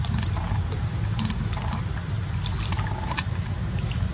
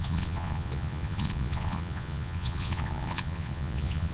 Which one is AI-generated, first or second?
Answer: second